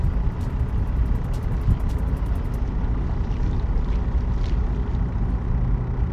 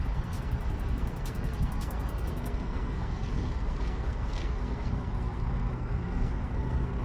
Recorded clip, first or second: first